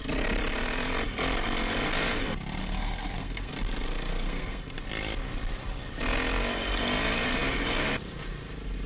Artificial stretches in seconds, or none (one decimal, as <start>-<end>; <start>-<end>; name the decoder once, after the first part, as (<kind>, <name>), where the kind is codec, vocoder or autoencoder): 2.6-3.5 (codec, SNAC); 4.1-4.6